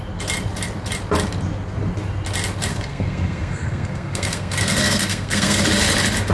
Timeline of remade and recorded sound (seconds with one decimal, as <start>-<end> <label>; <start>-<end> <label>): 0.0-2.7 recorded; 2.7-5.6 remade; 5.6-6.3 recorded